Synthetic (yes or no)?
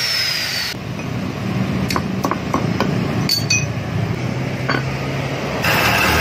no